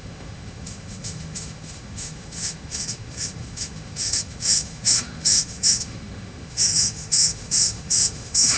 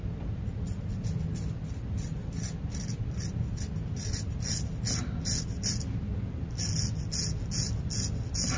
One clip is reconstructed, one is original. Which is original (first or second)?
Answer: second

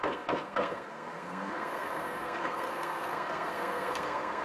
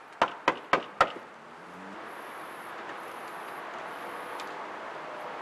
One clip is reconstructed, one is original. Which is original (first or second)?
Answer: second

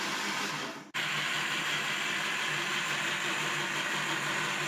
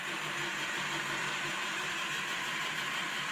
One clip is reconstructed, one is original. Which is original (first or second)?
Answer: first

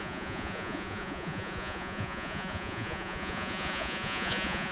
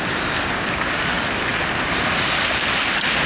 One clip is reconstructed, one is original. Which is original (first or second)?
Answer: second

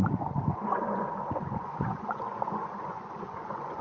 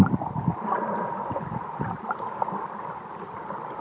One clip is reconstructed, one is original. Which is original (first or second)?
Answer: second